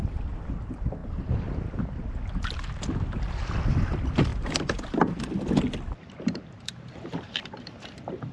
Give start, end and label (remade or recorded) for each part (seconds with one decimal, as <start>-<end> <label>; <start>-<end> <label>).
0.0-4.3 recorded; 4.3-5.2 remade; 5.2-6.0 recorded; 6.0-7.7 remade; 7.7-8.3 recorded